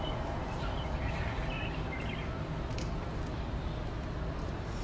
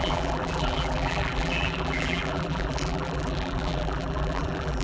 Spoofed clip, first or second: second